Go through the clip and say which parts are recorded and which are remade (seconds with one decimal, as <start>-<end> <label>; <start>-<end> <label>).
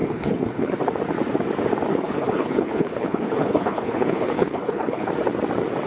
0.0-0.8 remade; 0.8-1.9 recorded; 1.9-5.1 remade; 5.1-5.9 recorded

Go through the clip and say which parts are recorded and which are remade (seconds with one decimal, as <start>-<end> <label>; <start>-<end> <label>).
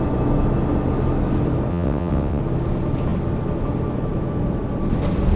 0.0-1.7 recorded; 1.7-2.4 remade; 2.4-5.4 recorded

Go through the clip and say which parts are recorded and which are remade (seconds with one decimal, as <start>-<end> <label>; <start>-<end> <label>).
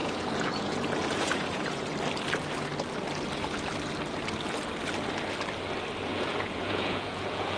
0.0-1.9 remade; 1.9-6.1 recorded; 6.1-7.6 remade